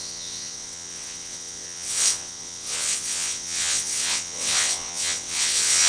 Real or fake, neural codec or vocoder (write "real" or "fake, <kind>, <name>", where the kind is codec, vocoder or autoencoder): fake, vocoder, WaveNeXt